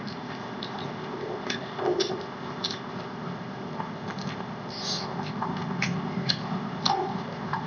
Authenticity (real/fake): fake